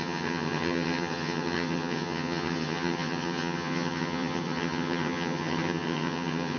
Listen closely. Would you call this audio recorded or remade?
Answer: remade